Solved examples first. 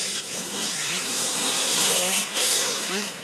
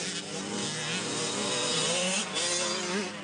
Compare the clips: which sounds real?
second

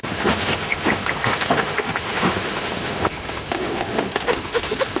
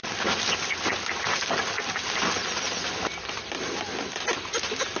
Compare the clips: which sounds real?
second